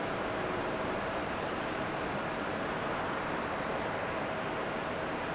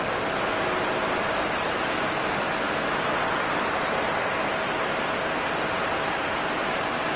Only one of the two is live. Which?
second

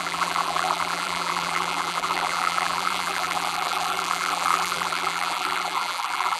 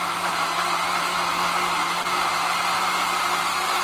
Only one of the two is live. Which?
second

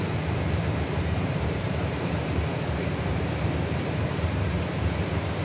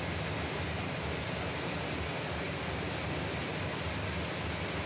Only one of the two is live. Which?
second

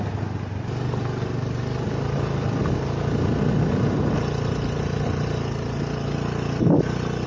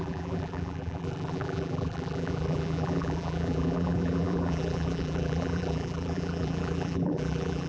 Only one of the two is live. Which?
first